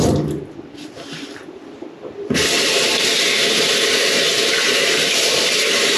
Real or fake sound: fake